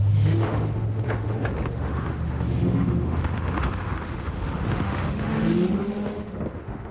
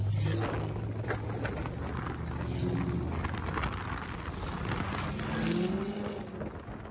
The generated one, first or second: first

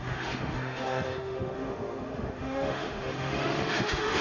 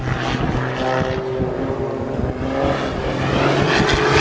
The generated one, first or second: first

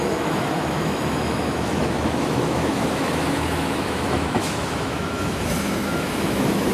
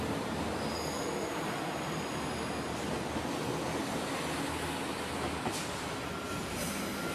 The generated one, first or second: first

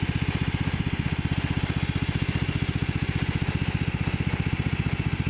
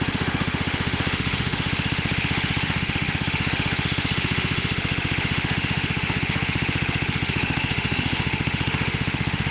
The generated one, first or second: second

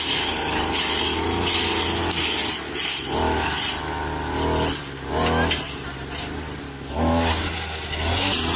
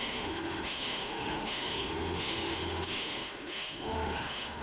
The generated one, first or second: second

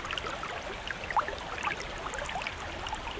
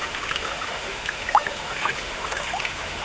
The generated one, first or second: second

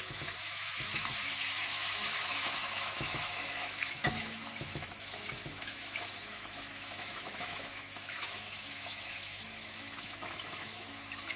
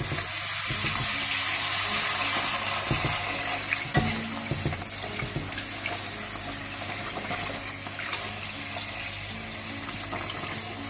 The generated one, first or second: first